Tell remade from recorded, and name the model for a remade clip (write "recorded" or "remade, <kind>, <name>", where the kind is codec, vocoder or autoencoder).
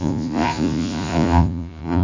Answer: remade, vocoder, Vocos